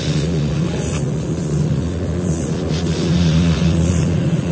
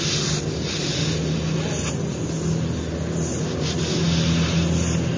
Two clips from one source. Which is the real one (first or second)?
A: second